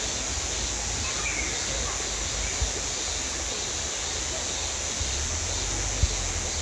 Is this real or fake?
real